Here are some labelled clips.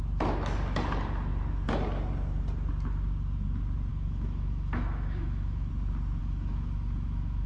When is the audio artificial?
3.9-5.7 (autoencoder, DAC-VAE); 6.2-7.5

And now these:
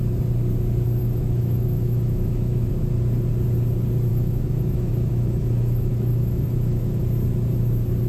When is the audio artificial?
1.0-2.7 (autoencoder, DAC-VAE); 4.1-7.0

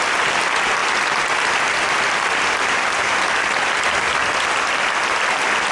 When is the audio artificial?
none

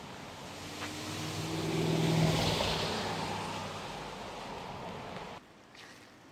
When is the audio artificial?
none